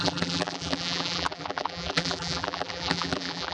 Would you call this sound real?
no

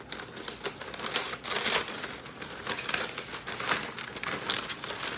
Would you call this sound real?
yes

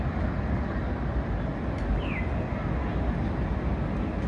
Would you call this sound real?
yes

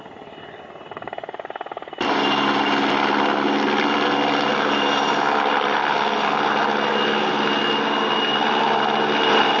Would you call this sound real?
yes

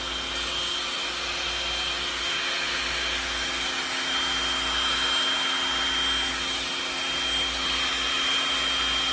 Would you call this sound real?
yes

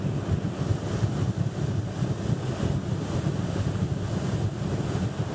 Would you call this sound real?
yes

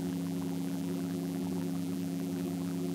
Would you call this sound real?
no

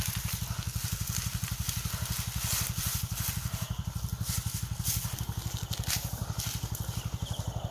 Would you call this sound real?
yes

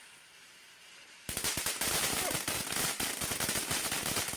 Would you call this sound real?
no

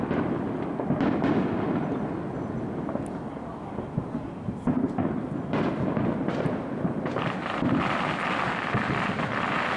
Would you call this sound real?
yes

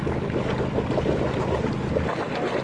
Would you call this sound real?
yes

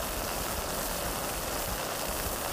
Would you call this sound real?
yes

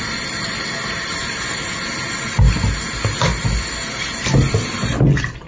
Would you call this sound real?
yes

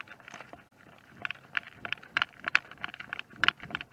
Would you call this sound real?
no